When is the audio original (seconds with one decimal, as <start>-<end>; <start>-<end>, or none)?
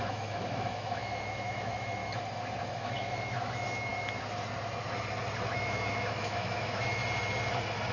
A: 2.0-2.7; 3.9-5.5; 7.0-7.9